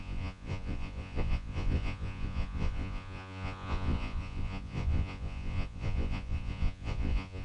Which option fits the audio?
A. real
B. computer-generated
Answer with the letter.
B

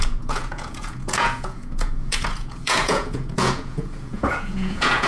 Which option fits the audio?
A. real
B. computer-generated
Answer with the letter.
B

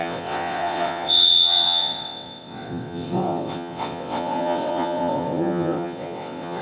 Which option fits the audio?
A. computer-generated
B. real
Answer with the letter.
A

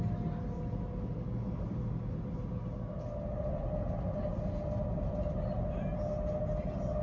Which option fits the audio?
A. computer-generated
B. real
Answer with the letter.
B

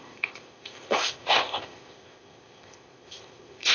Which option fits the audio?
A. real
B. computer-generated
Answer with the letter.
B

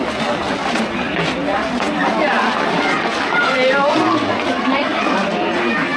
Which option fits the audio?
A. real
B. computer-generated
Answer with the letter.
A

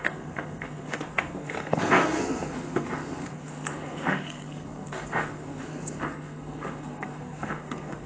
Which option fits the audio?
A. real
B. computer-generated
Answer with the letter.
B